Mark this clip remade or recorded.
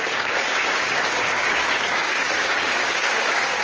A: remade